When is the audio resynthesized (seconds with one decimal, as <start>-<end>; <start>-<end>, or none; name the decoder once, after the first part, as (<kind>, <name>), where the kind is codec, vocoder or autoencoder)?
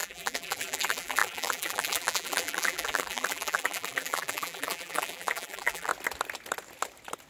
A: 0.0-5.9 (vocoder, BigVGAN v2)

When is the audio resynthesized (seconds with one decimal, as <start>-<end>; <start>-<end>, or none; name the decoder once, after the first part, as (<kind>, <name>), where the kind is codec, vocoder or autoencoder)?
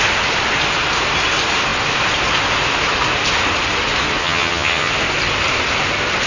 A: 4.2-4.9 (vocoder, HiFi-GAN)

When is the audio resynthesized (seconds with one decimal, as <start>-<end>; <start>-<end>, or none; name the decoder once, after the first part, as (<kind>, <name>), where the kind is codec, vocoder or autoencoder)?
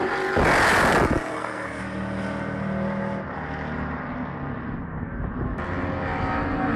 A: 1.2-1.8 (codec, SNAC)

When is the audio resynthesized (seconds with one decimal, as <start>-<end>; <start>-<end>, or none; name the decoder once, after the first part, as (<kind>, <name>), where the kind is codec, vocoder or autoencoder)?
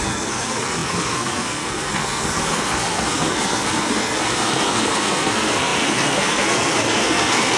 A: 0.0-7.6 (codec, SNAC)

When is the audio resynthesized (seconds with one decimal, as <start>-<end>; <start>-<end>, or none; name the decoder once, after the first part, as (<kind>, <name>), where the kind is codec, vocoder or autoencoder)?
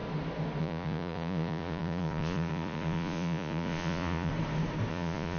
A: 0.6-4.3 (vocoder, Vocos); 4.9-5.4